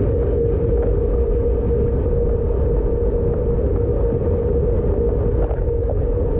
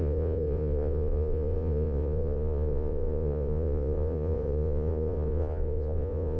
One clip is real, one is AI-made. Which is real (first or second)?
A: first